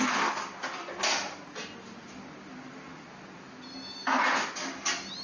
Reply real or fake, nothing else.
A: real